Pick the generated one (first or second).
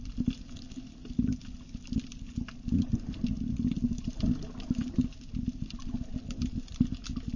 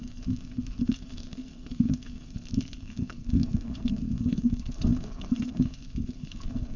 second